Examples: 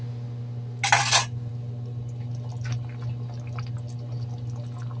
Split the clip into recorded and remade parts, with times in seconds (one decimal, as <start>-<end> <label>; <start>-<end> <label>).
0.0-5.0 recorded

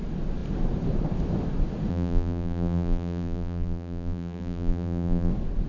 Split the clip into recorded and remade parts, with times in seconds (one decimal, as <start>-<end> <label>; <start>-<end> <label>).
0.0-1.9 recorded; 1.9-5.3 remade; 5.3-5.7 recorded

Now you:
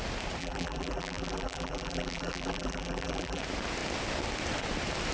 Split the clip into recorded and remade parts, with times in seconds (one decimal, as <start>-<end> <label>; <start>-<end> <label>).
0.0-0.4 recorded; 0.4-3.4 remade; 3.4-5.1 recorded

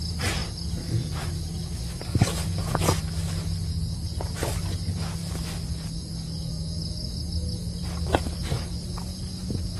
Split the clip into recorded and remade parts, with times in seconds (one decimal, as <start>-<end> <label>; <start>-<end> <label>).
0.0-9.8 recorded

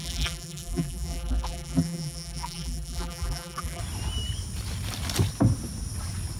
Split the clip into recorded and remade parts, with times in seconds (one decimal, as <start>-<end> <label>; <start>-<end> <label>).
0.0-3.8 remade; 3.8-6.4 recorded

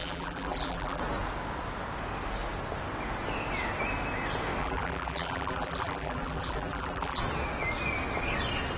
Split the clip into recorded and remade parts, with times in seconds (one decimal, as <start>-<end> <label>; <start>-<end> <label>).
0.0-1.0 remade; 1.0-4.6 recorded; 4.6-7.2 remade; 7.2-8.8 recorded

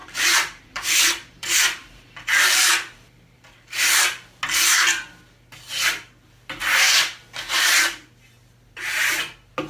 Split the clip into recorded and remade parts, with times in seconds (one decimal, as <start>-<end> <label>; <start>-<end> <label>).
0.0-4.3 remade; 4.3-6.6 recorded; 6.6-7.1 remade; 7.1-9.7 recorded

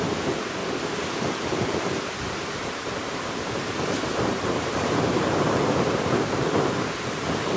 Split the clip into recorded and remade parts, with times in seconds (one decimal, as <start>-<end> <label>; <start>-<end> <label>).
0.0-0.6 remade; 0.6-2.0 recorded; 2.0-7.6 remade